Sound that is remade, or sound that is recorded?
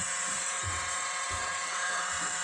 remade